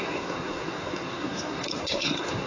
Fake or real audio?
fake